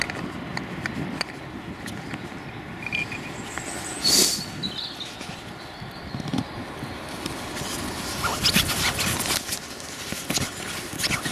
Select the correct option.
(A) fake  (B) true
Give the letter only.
B